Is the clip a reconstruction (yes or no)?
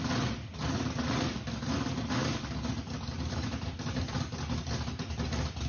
no